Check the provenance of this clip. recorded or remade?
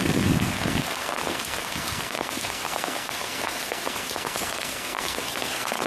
remade